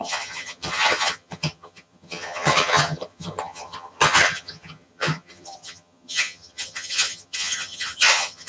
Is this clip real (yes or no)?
no